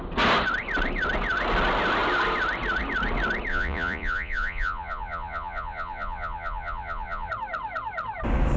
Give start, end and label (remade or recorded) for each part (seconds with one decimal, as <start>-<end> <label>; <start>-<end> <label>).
0.0-3.5 recorded; 3.5-7.3 remade; 7.3-8.6 recorded